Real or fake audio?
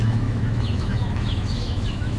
fake